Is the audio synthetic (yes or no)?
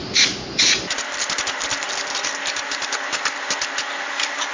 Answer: no